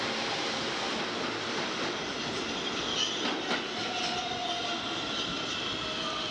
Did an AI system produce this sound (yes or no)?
no